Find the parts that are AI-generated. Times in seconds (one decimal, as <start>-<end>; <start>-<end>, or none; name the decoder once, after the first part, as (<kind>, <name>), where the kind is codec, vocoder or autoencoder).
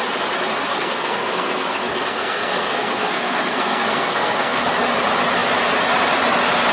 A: 0.7-4.7 (codec, SNAC)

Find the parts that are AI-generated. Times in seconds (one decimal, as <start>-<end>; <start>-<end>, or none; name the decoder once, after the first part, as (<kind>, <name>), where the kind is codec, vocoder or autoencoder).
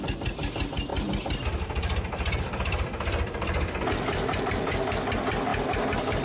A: none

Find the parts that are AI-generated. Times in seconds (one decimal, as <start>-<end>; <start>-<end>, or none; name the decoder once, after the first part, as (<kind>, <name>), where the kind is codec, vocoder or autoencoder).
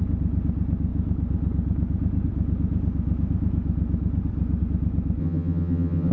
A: 5.2-6.1 (vocoder, HiFi-GAN)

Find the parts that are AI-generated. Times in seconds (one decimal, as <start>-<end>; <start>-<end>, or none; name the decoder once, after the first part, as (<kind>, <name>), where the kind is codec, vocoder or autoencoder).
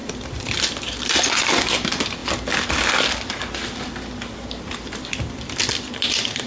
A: 0.0-6.5 (vocoder, BigVGAN v2)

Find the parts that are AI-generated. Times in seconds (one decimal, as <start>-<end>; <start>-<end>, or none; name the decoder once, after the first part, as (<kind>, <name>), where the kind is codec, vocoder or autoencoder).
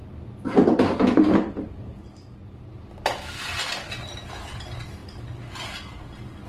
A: 0.0-3.9 (vocoder, BigVGAN v2); 5.0-5.5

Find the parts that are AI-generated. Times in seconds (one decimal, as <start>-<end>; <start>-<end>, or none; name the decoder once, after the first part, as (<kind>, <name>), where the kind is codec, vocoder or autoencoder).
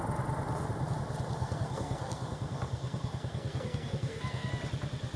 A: 1.4-4.5 (codec, SNAC)